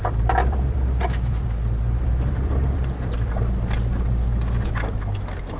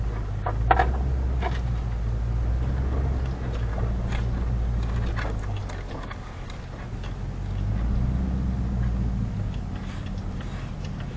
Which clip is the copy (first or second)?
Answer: first